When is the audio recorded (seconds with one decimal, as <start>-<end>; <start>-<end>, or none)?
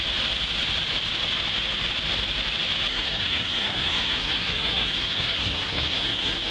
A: 0.0-2.9